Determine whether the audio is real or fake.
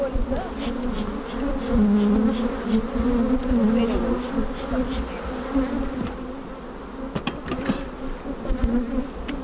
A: real